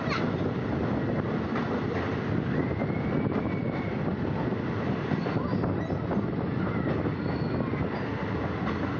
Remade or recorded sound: recorded